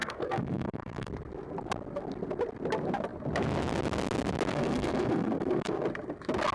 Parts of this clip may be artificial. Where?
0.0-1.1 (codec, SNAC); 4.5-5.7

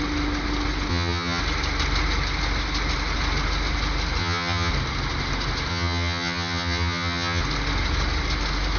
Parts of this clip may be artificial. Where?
0.9-1.4 (vocoder, HiFi-GAN); 4.2-4.7; 5.7-7.4

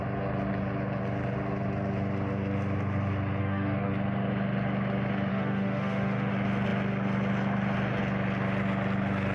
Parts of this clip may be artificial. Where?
3.4-3.9 (autoencoder, DAC-VAE); 5.3-6.3

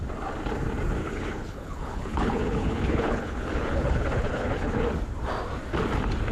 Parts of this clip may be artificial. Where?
1.0-4.8 (codec, HILCodec)

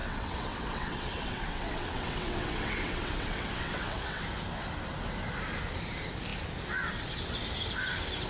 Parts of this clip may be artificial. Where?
0.0-4.2 (vocoder, WaveNeXt)

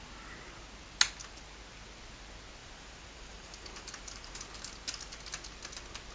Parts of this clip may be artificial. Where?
2.6-4.4 (vocoder, BigVGAN v2)

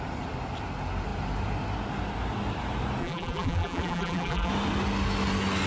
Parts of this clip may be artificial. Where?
3.0-4.5 (vocoder, BigVGAN v2)

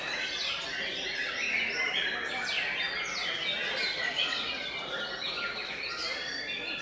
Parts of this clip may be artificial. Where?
0.0-1.2 (vocoder, BigVGAN v2); 4.0-6.8